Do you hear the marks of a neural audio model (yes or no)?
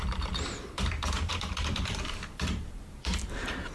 yes